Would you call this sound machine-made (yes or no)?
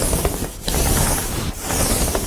no